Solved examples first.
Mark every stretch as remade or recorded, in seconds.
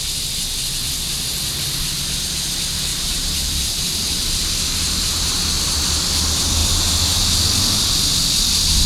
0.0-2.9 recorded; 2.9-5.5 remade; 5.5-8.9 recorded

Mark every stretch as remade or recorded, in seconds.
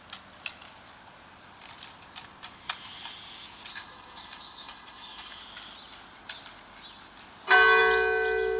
0.0-3.7 recorded; 3.7-5.4 remade; 5.4-8.6 recorded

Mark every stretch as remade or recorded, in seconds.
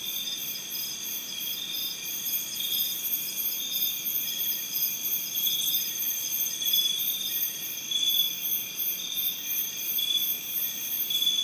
0.0-11.4 remade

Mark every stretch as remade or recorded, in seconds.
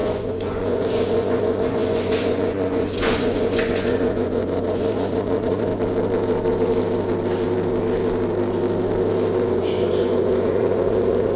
0.0-5.7 remade; 5.7-9.5 recorded; 9.5-11.4 remade